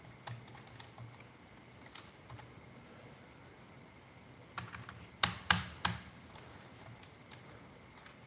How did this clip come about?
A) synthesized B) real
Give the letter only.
B